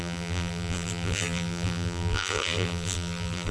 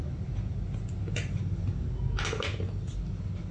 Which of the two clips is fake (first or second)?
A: first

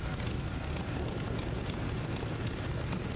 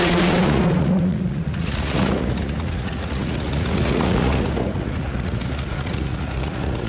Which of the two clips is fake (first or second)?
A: second